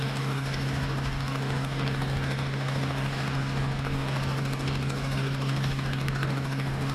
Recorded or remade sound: remade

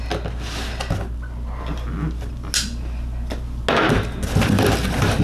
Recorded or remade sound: recorded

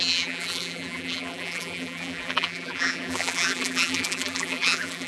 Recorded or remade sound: remade